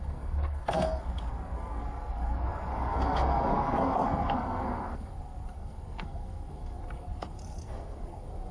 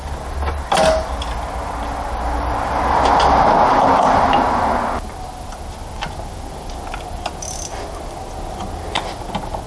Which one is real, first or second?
second